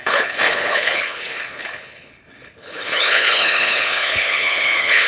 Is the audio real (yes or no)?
no